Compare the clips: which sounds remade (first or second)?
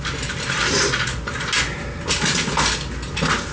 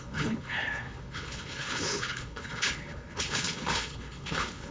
second